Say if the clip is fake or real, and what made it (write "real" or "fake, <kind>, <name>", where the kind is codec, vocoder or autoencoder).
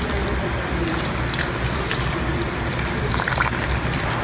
real